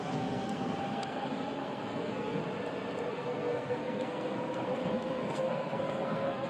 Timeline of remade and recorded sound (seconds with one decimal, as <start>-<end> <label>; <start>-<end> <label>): 0.0-2.4 remade; 2.4-3.1 recorded; 3.1-6.5 remade